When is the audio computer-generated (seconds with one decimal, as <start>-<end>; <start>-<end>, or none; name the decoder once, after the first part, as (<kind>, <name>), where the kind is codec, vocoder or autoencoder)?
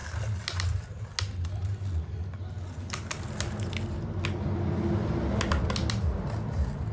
none